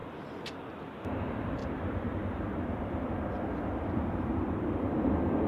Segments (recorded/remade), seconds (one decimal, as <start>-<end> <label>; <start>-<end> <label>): 0.0-5.5 remade